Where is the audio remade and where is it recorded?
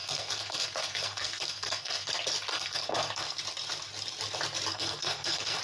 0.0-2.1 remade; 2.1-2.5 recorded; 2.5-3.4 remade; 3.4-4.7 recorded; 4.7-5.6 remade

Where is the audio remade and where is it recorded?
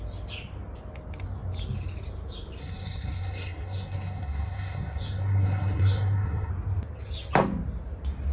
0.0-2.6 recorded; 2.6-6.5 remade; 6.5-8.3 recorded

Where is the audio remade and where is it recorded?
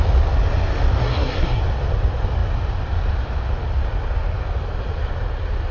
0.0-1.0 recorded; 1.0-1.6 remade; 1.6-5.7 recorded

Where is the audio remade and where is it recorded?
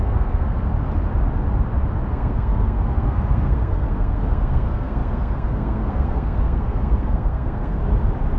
0.0-0.7 remade; 0.7-2.1 recorded; 2.1-7.8 remade; 7.8-8.4 recorded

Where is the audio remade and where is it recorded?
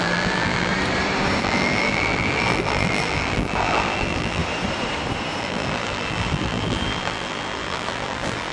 0.0-0.7 remade; 0.7-1.4 recorded; 1.4-4.4 remade; 4.4-5.4 recorded; 5.4-8.5 remade